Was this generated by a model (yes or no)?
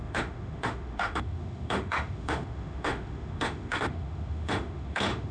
yes